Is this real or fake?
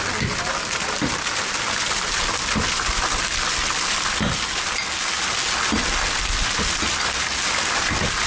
real